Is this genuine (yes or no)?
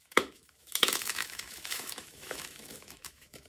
no